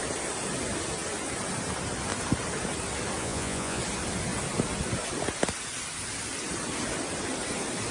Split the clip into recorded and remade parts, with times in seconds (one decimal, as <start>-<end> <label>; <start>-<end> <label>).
0.0-3.2 recorded; 3.2-3.8 remade; 3.8-7.9 recorded